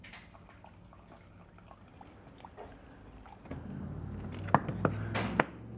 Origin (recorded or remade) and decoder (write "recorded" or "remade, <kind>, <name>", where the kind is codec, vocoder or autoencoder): recorded